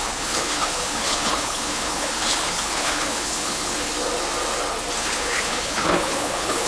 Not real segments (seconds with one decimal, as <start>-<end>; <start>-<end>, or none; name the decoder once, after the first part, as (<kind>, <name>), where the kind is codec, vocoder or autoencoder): 0.0-3.9 (codec, HILCodec); 5.0-6.7